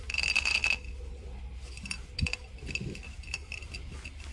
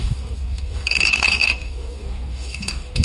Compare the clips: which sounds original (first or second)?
first